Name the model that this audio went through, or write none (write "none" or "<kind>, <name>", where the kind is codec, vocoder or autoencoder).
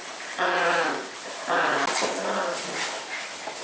none